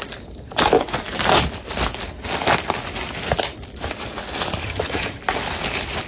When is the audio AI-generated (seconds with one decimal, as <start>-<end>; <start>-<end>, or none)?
4.6-5.2